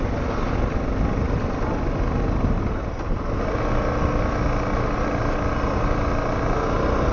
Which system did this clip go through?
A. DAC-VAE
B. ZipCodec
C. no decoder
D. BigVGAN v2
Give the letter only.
C